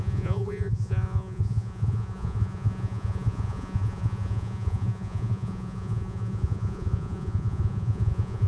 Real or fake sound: fake